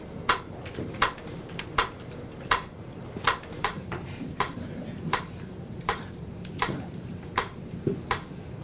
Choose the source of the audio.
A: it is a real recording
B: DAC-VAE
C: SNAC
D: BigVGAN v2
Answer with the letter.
D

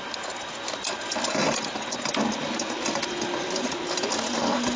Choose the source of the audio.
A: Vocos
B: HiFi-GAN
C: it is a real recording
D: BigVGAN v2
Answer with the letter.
D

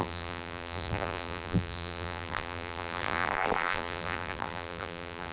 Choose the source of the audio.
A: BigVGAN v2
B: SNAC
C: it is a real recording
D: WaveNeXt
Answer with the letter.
A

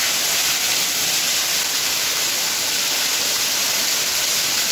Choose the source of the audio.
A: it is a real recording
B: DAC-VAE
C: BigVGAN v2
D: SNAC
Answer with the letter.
A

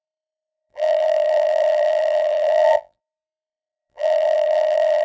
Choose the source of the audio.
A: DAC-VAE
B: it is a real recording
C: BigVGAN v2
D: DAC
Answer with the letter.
C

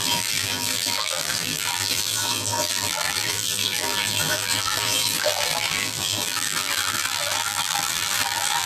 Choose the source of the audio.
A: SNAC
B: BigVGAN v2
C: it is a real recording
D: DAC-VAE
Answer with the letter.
B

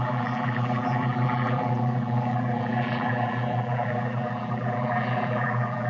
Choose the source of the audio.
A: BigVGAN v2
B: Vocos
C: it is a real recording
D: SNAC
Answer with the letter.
A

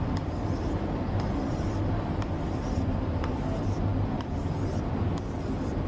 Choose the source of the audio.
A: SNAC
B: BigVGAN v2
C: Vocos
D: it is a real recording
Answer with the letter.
B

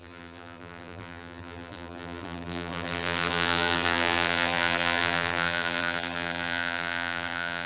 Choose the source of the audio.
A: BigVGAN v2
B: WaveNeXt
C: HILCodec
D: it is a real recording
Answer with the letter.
A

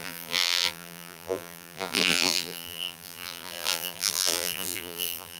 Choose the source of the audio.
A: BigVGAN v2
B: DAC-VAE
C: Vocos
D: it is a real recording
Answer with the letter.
A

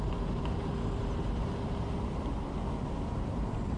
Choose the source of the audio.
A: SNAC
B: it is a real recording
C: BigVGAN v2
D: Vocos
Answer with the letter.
B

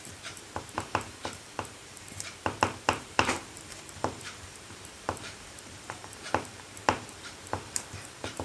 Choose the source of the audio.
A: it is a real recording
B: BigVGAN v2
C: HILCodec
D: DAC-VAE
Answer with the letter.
B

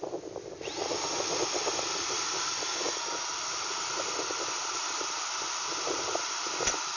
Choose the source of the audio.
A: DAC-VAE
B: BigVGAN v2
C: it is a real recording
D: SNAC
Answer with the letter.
B